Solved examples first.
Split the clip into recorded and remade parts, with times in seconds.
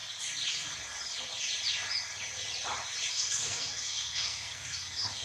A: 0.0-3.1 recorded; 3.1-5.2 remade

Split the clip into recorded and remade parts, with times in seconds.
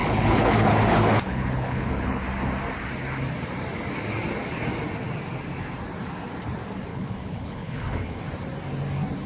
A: 0.0-2.2 remade; 2.2-6.9 recorded; 6.9-8.2 remade; 8.2-9.3 recorded